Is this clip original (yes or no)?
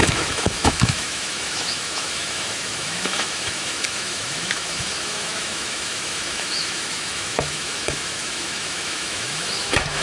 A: no